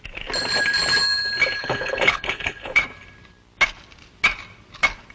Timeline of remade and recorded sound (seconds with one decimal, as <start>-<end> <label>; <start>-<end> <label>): 0.0-1.6 recorded; 1.6-2.8 remade; 2.8-5.1 recorded